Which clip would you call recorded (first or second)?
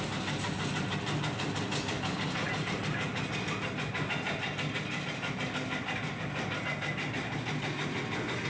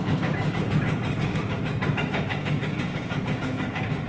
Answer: first